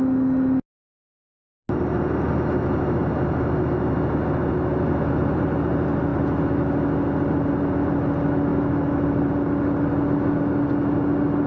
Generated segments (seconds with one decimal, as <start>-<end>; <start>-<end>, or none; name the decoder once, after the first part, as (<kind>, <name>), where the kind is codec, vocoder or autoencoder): none